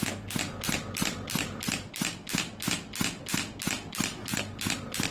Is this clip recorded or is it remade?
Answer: recorded